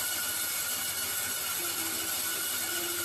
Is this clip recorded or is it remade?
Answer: recorded